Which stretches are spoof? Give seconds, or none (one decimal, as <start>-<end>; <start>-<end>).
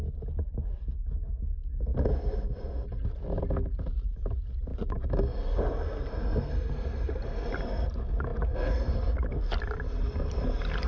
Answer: 1.9-3.4; 8.3-10.9